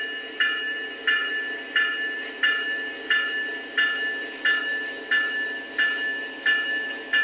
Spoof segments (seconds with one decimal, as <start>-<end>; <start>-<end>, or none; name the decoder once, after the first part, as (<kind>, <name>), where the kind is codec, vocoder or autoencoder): none